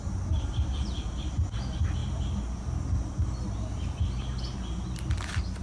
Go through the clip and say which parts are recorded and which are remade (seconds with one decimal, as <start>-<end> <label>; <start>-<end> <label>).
0.0-5.6 recorded